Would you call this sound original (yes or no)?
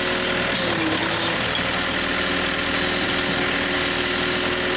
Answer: yes